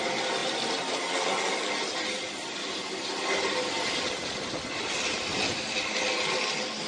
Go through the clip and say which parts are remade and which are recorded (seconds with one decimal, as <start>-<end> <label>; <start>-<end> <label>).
0.0-6.9 recorded